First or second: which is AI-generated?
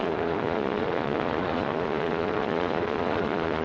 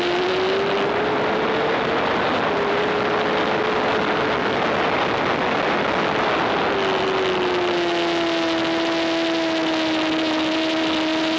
first